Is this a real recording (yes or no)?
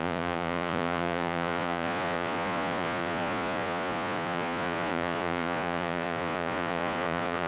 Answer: no